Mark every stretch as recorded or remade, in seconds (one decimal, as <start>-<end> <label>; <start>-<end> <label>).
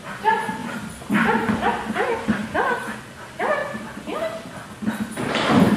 0.0-0.6 recorded; 0.6-1.1 remade; 1.1-2.4 recorded; 2.4-3.2 remade; 3.2-3.6 recorded; 3.6-4.9 remade; 4.9-5.8 recorded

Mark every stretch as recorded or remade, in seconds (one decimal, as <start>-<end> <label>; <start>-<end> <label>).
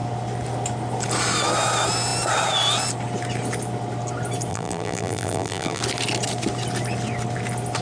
0.0-4.5 recorded; 4.5-5.8 remade; 5.8-7.8 recorded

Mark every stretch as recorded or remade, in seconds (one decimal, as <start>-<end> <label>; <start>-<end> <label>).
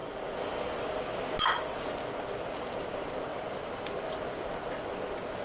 0.0-3.3 recorded; 3.3-4.6 remade; 4.6-5.4 recorded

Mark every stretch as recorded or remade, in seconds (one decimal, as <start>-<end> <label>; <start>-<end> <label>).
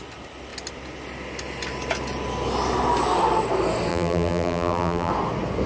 0.0-3.9 recorded; 3.9-5.1 remade; 5.1-5.7 recorded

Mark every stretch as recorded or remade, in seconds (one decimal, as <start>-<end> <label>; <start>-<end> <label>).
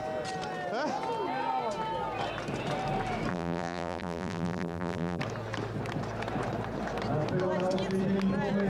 0.0-3.3 recorded; 3.3-5.2 remade; 5.2-8.7 recorded